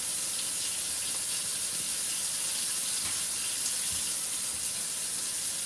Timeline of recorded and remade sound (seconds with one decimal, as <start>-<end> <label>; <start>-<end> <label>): 0.0-5.7 recorded